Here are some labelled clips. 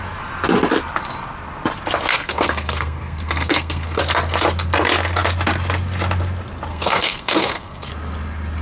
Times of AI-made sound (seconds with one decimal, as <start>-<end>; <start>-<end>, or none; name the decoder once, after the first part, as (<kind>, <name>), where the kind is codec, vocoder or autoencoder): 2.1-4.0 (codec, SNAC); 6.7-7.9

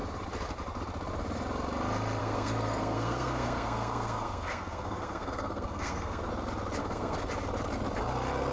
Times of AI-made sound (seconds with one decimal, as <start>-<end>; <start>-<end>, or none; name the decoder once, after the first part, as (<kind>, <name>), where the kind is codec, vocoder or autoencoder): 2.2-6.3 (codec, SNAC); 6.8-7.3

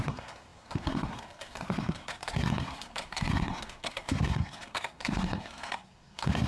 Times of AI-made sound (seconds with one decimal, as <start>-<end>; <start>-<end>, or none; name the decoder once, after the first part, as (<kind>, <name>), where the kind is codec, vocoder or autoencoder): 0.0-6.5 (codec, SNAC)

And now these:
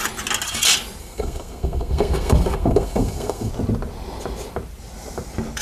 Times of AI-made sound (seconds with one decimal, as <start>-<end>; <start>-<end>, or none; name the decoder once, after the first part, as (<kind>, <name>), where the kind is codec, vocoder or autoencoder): 1.0-3.5 (codec, SNAC)

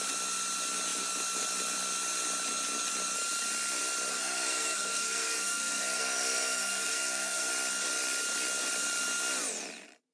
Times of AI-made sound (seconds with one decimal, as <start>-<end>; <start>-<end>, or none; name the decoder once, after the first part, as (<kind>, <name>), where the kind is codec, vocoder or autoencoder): 4.1-7.5 (codec, SNAC)